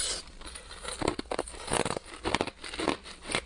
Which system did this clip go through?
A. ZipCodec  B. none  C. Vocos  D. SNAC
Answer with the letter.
B